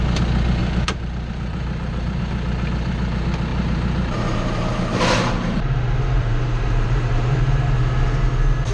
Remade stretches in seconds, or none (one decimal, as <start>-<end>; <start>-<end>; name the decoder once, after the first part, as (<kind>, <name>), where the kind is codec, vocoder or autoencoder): 0.6-2.2 (vocoder, BigVGAN v2); 3.5-7.4